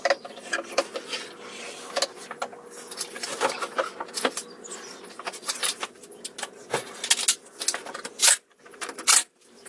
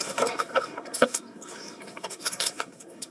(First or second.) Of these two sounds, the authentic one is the first